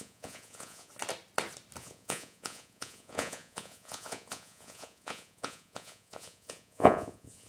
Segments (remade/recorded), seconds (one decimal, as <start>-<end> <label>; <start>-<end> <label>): 0.0-0.9 remade; 0.9-1.8 recorded; 1.8-7.5 remade